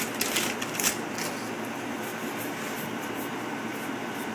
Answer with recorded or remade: recorded